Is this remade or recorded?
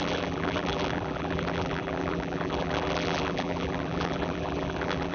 remade